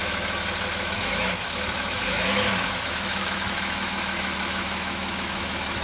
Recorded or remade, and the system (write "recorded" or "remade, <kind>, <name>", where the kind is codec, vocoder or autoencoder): remade, autoencoder, DAC-VAE